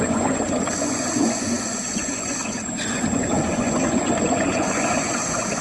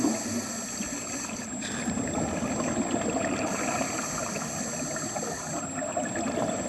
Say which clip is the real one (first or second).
second